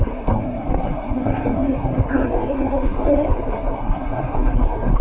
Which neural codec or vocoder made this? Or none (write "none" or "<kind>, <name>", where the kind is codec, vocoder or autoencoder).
codec, SNAC